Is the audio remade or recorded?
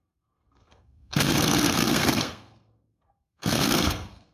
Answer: remade